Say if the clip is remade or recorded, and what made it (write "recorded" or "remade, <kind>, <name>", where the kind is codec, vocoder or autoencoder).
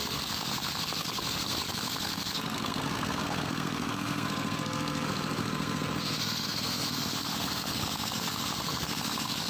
remade, codec, SNAC